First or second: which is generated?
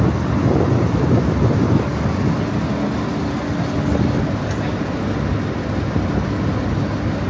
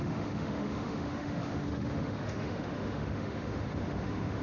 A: second